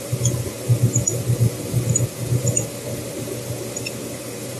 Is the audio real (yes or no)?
no